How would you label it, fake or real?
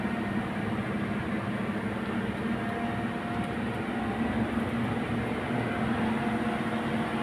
real